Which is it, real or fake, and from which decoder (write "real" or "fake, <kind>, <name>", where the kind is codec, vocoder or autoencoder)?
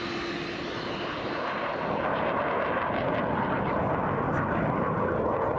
real